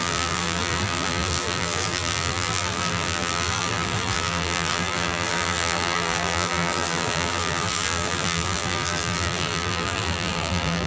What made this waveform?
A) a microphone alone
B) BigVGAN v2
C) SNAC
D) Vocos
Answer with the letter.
B